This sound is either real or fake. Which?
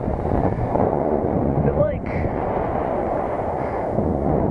fake